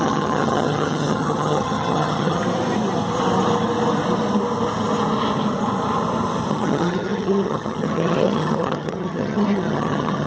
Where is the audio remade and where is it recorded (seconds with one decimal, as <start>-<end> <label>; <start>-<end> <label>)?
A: 0.0-2.4 remade; 2.4-6.5 recorded; 6.5-10.3 remade